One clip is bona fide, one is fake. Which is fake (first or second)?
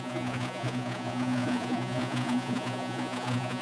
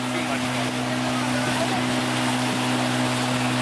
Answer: first